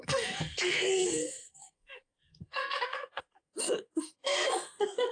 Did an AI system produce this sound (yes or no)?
yes